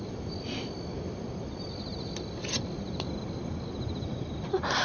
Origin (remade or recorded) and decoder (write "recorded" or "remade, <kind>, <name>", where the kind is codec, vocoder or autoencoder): recorded